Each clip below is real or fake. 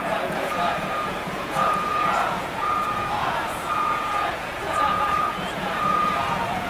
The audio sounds fake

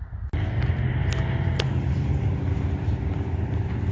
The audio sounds real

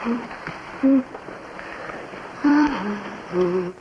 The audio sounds fake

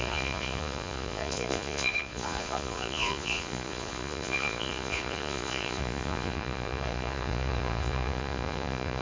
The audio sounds fake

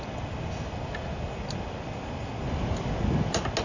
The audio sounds real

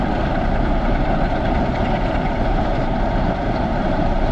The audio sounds fake